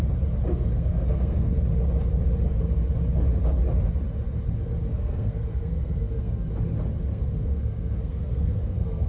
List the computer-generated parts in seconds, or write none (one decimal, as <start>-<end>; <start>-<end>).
0.5-1.5; 4.9-6.5; 7.1-9.1